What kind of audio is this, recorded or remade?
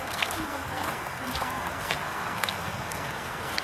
remade